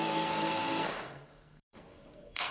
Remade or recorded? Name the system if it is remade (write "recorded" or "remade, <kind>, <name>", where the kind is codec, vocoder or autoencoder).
remade, codec, SNAC